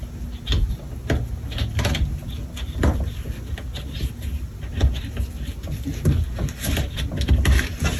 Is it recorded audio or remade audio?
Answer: recorded